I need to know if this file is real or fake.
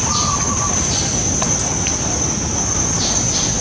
real